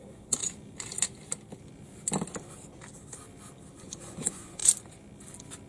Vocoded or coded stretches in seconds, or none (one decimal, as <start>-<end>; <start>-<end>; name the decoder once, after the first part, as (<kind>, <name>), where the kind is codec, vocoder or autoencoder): 0.0-0.4 (vocoder, Vocos); 3.8-4.6